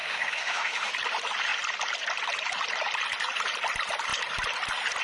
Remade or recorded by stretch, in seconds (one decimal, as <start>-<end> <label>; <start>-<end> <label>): 0.0-0.9 remade; 0.9-5.0 recorded